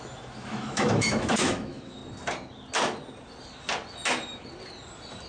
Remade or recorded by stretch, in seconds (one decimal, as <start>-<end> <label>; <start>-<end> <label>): 0.0-2.0 remade; 2.0-5.3 recorded